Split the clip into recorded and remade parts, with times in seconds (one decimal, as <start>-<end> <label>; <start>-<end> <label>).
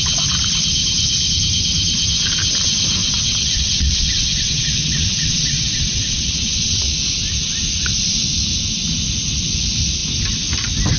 0.0-3.0 recorded; 3.0-7.0 remade; 7.0-11.0 recorded